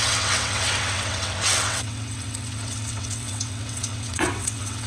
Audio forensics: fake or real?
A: fake